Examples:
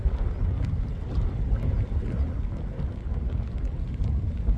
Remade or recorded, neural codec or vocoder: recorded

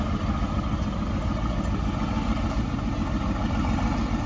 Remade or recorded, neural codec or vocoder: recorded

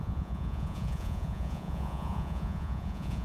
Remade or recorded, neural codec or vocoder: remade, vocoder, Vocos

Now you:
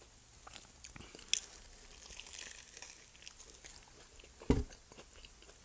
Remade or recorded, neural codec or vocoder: recorded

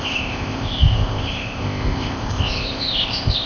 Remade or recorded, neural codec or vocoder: remade, codec, ZipCodec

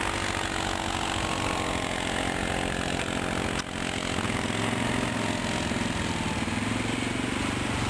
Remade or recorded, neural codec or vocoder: recorded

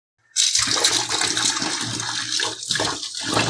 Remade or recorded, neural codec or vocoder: recorded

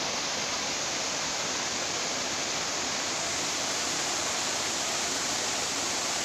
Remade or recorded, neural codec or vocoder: remade, vocoder, BigVGAN v2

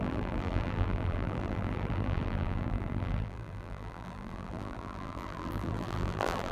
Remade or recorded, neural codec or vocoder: remade, vocoder, BigVGAN v2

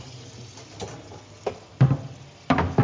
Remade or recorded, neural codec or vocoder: recorded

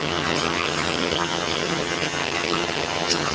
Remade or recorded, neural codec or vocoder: remade, vocoder, HiFi-GAN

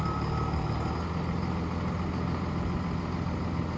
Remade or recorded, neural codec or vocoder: recorded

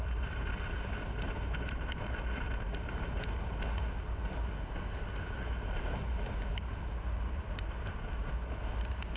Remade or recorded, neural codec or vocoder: recorded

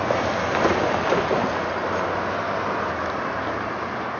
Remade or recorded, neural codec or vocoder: recorded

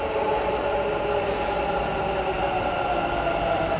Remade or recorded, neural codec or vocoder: recorded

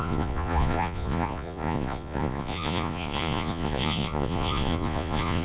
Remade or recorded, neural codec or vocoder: remade, vocoder, Vocos